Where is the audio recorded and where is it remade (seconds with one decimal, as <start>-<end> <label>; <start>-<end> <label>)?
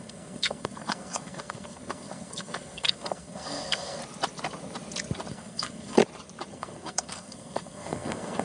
0.0-4.0 remade; 4.0-5.3 recorded; 5.3-6.0 remade; 6.0-6.5 recorded; 6.5-8.4 remade